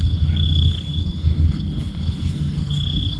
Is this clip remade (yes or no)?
yes